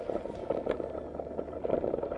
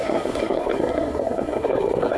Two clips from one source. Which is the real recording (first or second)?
first